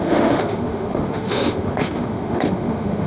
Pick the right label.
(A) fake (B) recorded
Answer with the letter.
A